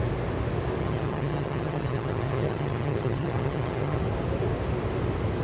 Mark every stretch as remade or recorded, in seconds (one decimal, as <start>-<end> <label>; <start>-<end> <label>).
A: 0.0-0.8 recorded; 0.8-4.0 remade; 4.0-5.4 recorded